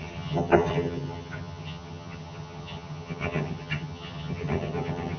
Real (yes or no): no